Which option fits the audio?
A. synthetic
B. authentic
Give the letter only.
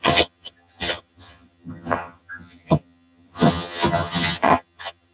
A